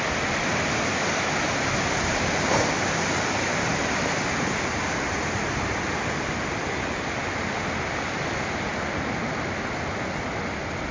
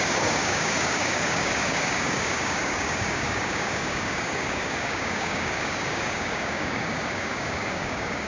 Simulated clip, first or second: second